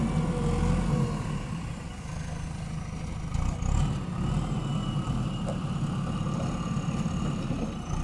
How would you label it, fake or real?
real